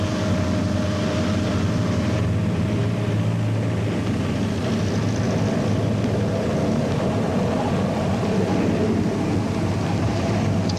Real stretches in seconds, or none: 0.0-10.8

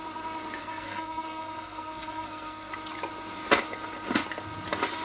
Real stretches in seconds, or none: 0.0-0.6; 2.7-5.0

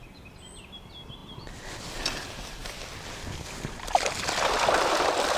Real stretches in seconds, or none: 0.0-5.4